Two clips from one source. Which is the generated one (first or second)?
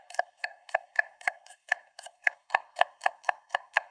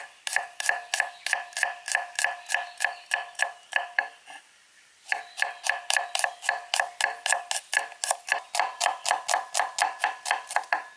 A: first